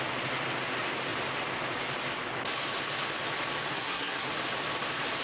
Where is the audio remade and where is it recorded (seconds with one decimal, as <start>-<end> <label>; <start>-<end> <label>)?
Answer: 0.0-3.7 recorded; 3.7-4.3 remade; 4.3-5.2 recorded